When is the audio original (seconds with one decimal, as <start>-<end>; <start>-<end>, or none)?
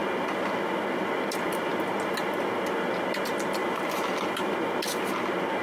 0.0-5.6